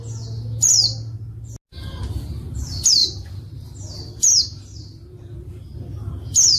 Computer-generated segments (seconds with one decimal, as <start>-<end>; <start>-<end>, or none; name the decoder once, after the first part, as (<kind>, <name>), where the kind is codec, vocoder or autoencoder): 3.0-4.4 (vocoder, BigVGAN v2)